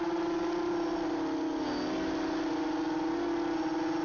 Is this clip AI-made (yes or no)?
no